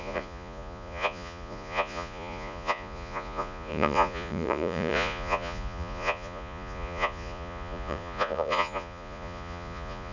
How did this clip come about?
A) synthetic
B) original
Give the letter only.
A